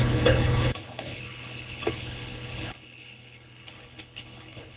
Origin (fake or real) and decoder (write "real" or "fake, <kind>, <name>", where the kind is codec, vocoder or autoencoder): fake, codec, HILCodec